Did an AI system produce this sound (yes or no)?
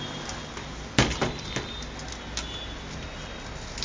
no